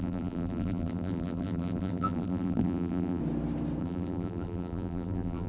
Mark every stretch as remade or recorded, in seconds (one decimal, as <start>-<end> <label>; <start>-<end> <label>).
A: 0.0-3.2 remade; 3.2-3.8 recorded; 3.8-5.5 remade